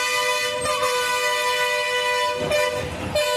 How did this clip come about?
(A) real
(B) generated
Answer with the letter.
A